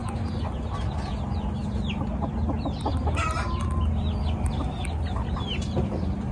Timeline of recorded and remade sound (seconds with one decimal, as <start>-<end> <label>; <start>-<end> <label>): 0.0-2.9 recorded; 2.9-3.6 remade; 3.6-6.3 recorded